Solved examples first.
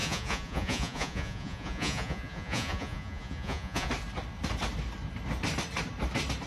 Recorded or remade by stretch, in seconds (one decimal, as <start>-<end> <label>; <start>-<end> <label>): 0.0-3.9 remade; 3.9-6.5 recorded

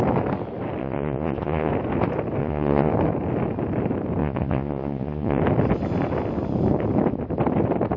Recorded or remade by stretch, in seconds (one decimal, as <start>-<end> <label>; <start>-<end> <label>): 0.0-0.8 recorded; 0.8-1.7 remade; 1.7-2.4 recorded; 2.4-2.9 remade; 2.9-4.2 recorded; 4.2-5.4 remade; 5.4-8.0 recorded

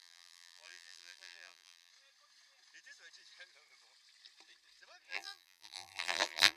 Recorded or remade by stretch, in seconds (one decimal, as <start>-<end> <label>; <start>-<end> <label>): 0.0-1.9 remade; 1.9-5.1 recorded; 5.1-6.6 remade

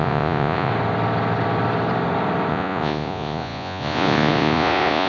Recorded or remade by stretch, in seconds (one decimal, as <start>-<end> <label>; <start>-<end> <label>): 0.0-0.7 remade; 0.7-2.5 recorded; 2.5-5.1 remade